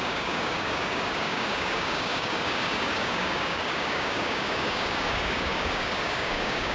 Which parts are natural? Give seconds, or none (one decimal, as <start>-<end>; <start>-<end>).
none